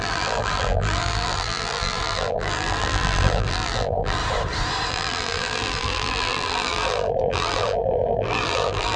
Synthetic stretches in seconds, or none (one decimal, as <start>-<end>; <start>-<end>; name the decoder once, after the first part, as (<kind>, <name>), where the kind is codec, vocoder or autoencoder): 0.0-4.2 (vocoder, BigVGAN v2); 4.9-9.0